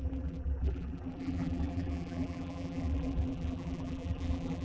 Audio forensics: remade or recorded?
remade